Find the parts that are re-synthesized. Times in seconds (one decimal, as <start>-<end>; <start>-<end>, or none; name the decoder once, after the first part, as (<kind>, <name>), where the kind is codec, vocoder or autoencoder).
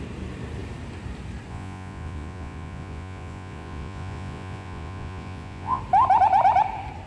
1.5-5.8 (vocoder, Vocos)